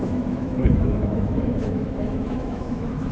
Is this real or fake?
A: fake